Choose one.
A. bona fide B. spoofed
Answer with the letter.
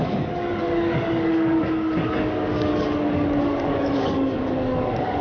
B